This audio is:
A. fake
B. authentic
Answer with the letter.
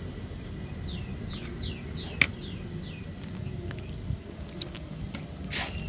B